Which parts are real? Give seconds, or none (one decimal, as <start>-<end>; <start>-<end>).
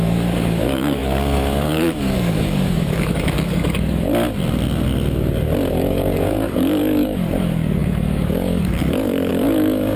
4.1-5.7